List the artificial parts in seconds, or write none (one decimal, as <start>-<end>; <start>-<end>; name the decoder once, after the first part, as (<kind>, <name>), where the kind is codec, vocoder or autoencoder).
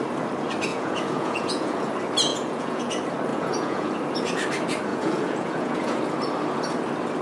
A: 0.7-1.9 (vocoder, Vocos); 2.3-2.9; 3.3-3.9; 4.9-6.0